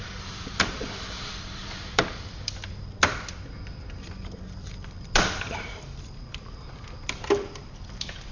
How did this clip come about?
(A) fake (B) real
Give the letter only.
A